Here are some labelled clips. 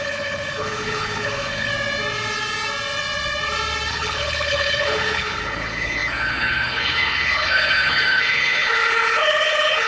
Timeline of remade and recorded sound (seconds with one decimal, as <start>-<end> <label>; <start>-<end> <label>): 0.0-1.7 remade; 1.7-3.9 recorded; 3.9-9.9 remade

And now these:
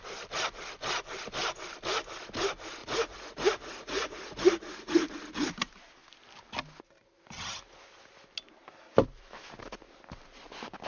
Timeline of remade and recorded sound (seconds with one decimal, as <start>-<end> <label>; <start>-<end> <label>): 0.0-2.8 recorded; 2.8-5.1 remade; 5.1-10.9 recorded

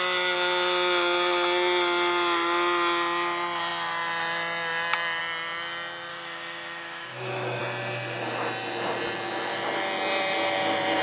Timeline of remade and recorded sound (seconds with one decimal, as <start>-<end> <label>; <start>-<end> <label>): 0.0-6.1 recorded; 6.1-7.6 remade; 7.6-11.0 recorded

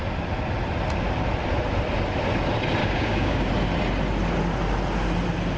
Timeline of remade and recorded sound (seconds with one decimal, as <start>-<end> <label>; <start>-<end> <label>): 0.0-2.8 recorded; 2.8-3.5 remade; 3.5-5.6 recorded

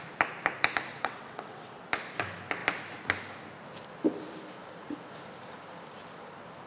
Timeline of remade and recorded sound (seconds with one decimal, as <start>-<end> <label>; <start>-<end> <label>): 0.0-0.9 recorded; 0.9-1.8 remade; 1.8-6.7 recorded